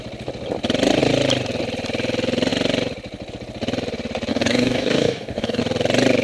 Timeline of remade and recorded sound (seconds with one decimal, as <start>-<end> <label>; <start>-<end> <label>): 0.0-4.3 recorded; 4.3-5.6 remade; 5.6-6.2 recorded

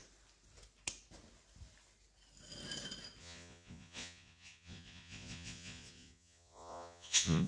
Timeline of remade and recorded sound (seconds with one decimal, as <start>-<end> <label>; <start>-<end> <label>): 0.0-3.2 recorded; 3.2-7.5 remade